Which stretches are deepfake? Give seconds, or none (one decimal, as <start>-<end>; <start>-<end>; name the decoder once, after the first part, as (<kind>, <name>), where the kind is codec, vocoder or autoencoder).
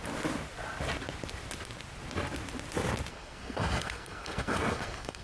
3.1-5.2 (codec, SNAC)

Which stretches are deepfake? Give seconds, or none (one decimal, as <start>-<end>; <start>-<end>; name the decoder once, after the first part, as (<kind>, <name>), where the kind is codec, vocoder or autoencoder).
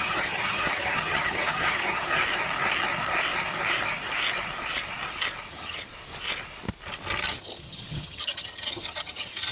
0.0-2.2 (vocoder, HiFi-GAN); 5.5-5.9; 7.4-9.5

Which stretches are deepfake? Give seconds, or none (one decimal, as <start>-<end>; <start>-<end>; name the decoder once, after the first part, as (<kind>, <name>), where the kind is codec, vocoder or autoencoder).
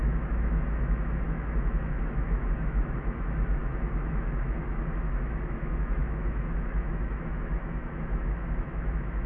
0.0-9.3 (autoencoder, DAC-VAE)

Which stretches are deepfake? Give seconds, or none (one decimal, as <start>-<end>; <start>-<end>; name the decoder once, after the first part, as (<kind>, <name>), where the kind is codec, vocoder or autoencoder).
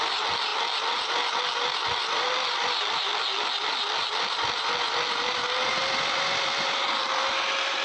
none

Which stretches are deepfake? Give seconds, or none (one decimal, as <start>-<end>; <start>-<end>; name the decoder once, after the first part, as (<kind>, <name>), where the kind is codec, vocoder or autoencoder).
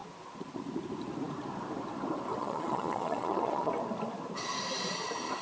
2.4-3.7 (vocoder, Vocos)